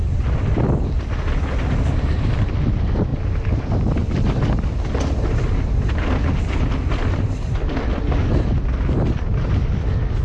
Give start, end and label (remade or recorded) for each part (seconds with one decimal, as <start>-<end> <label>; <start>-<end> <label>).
0.0-10.2 recorded